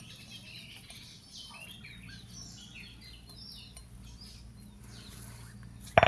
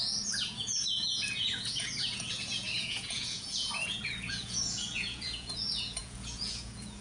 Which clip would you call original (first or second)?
first